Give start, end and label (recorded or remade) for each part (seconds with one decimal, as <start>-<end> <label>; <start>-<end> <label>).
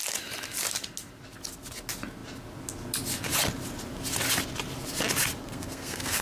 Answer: 0.0-5.4 recorded; 5.4-6.2 remade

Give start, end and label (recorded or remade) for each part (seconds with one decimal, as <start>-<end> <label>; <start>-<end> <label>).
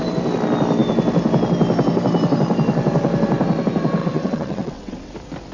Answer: 0.0-4.0 recorded; 4.0-5.1 remade; 5.1-5.5 recorded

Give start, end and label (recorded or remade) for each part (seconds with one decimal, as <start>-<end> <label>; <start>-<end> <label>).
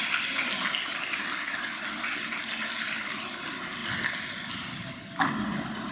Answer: 0.0-5.9 recorded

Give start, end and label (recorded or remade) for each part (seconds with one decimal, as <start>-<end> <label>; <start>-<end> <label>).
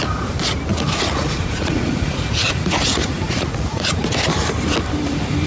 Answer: 0.0-0.7 recorded; 0.7-4.0 remade; 4.0-5.5 recorded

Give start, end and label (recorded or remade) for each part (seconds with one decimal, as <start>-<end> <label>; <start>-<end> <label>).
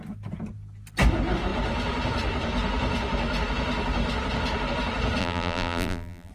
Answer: 0.0-5.2 recorded; 5.2-6.3 remade